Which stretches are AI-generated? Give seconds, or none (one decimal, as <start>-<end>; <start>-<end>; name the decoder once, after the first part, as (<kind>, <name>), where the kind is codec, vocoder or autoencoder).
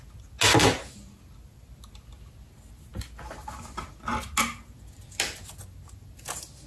none